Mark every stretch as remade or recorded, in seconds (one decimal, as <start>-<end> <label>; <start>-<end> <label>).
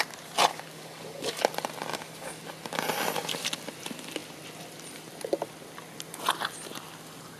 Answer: 0.0-0.5 recorded; 0.5-1.4 remade; 1.4-1.9 recorded; 1.9-2.5 remade; 2.5-7.4 recorded